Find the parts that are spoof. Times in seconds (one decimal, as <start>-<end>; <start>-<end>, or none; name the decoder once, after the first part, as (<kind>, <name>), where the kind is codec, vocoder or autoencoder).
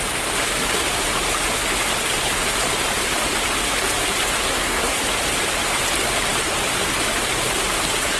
4.4-5.0 (codec, SNAC)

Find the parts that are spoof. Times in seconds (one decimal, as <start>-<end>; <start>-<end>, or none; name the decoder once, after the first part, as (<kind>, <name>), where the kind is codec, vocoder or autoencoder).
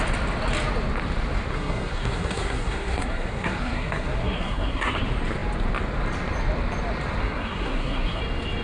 1.5-5.0 (codec, SNAC); 7.2-8.2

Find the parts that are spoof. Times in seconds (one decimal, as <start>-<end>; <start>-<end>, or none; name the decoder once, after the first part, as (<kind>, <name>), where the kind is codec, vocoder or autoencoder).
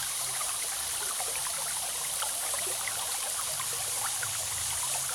0.4-3.5 (vocoder, BigVGAN v2)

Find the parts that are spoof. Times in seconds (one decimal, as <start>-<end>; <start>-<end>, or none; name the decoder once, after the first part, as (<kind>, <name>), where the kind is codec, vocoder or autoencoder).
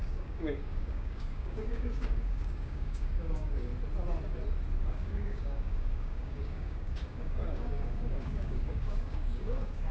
0.0-3.7 (codec, DAC); 4.8-9.9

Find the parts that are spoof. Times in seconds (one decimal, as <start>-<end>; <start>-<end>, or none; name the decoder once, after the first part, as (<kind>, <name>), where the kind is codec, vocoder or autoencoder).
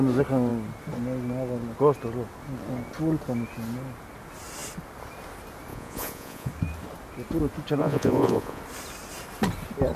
5.7-6.5 (vocoder, Vocos); 7.8-8.6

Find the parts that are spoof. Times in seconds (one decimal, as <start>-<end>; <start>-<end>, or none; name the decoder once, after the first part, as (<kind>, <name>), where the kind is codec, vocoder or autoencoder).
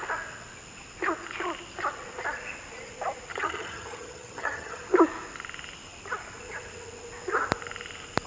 3.3-4.8 (vocoder, HiFi-GAN)